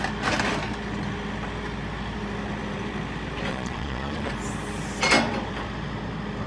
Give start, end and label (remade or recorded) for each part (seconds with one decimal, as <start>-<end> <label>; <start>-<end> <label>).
0.0-3.5 recorded; 3.5-4.3 remade; 4.3-6.5 recorded